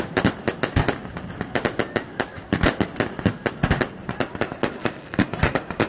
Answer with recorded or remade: recorded